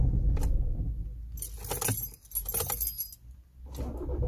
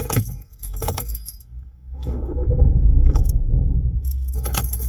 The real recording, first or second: first